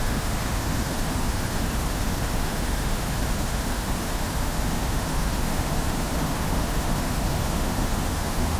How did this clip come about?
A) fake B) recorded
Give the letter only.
A